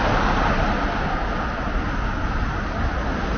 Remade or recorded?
recorded